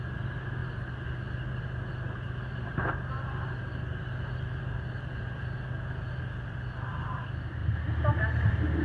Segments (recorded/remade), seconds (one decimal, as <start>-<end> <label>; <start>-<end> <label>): 0.0-8.8 recorded